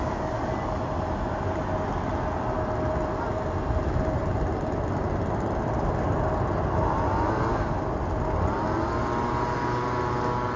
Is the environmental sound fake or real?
real